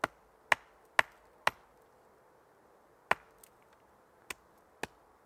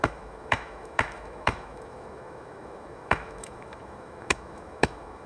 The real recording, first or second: first